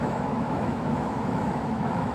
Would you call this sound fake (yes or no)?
yes